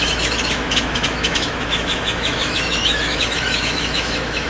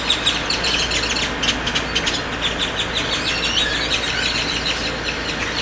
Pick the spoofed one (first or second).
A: first